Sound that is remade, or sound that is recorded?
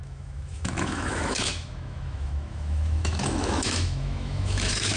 remade